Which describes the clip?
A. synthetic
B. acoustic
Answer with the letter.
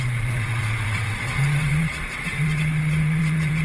A